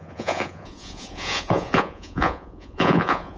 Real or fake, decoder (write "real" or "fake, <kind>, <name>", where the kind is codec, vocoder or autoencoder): fake, vocoder, Vocos